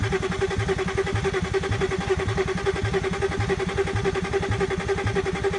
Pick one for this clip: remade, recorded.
recorded